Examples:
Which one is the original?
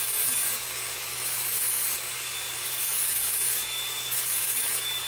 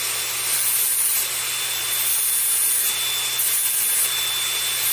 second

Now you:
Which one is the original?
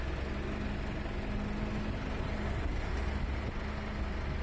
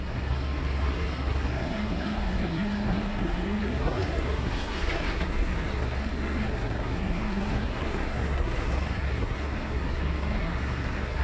first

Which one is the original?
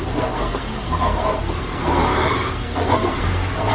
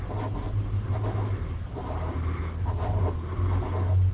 second